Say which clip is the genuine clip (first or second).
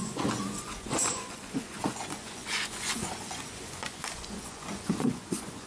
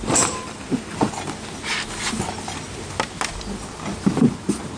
second